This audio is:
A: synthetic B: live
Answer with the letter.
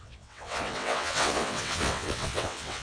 A